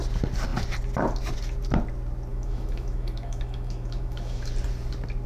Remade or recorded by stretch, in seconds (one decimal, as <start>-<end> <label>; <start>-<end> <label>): 0.0-2.3 recorded; 2.3-4.5 remade; 4.5-5.3 recorded